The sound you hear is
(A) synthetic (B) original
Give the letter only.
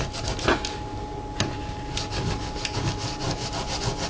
B